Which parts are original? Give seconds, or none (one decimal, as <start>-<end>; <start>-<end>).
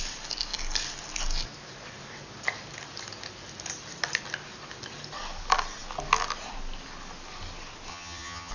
0.0-7.9